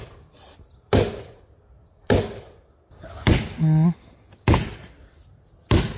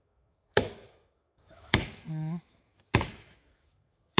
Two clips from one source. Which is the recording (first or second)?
first